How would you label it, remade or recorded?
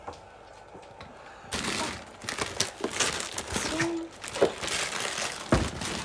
recorded